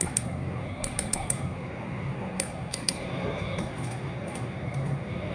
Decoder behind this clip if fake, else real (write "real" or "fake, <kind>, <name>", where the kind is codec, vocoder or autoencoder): fake, codec, SNAC